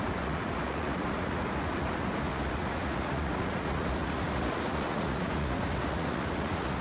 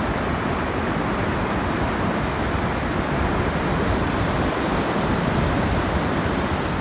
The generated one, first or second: first